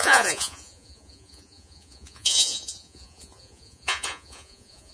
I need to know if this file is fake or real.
fake